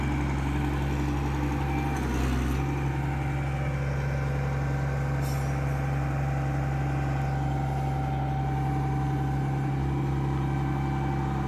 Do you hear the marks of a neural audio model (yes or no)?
no